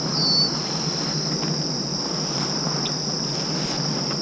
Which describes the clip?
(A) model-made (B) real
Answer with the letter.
B